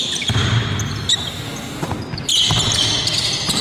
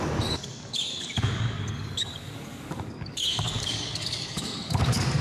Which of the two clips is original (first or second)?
first